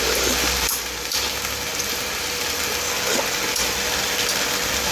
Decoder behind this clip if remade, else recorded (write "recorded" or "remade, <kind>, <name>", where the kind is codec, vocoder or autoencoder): remade, vocoder, BigVGAN v2